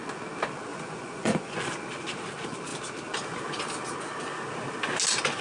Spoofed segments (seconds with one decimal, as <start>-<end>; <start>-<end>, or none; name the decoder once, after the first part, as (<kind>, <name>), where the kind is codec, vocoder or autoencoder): 0.7-1.6 (vocoder, Vocos)